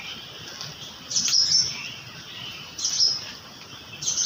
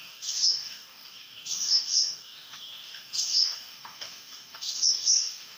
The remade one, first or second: second